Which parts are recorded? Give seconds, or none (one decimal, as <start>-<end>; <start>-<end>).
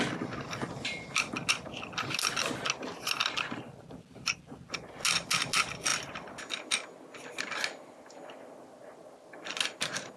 0.0-10.2